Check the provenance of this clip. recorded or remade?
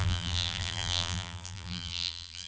remade